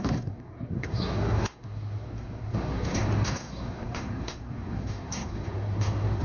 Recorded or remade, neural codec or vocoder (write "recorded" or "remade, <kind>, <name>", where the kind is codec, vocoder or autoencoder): remade, codec, SNAC